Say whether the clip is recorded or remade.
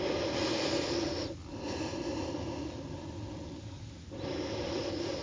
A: recorded